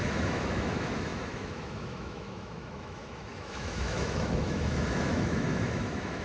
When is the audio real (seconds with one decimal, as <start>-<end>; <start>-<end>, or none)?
none